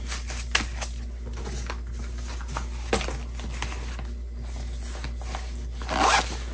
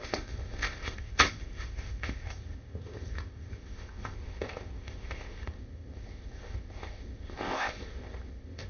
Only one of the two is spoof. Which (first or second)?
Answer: second